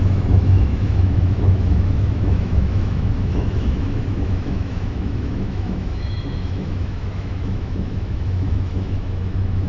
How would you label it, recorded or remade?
remade